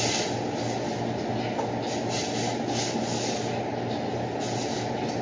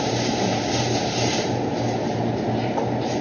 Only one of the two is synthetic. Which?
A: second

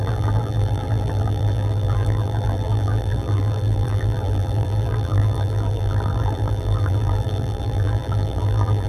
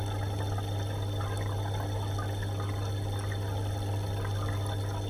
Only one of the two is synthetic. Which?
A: first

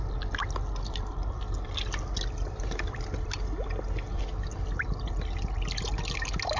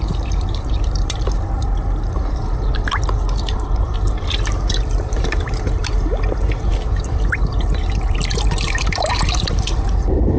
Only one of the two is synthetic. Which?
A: second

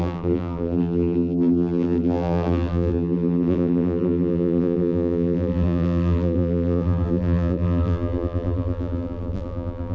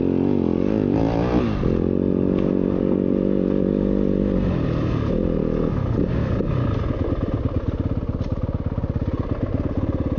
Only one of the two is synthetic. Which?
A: first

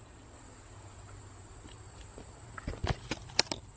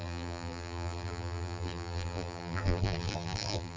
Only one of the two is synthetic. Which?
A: second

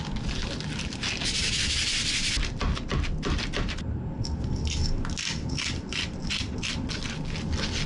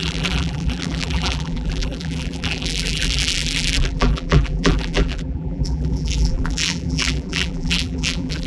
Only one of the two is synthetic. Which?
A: second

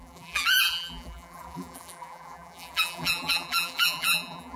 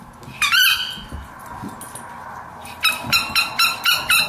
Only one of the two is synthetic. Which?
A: first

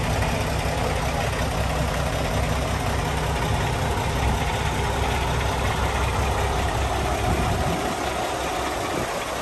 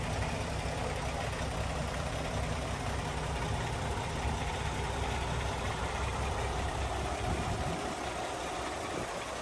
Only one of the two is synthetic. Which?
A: second